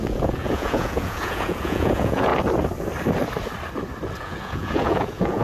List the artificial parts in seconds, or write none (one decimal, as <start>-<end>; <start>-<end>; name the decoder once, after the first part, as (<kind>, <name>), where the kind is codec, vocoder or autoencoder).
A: 0.0-2.3 (vocoder, Vocos); 4.1-5.4